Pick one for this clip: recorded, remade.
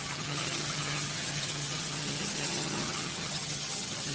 remade